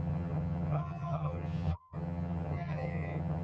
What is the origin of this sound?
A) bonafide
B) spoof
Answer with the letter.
B